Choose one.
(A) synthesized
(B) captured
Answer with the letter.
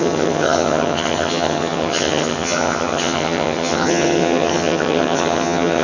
A